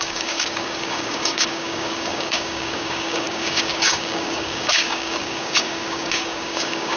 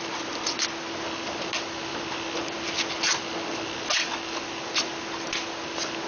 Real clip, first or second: second